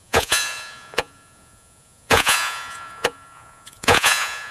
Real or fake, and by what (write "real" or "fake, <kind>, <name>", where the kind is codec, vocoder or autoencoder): fake, vocoder, Vocos